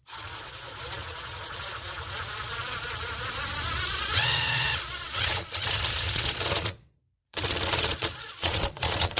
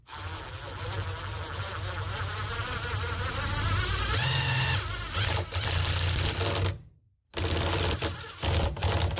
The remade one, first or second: first